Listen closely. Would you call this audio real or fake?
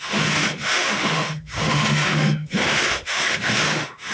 fake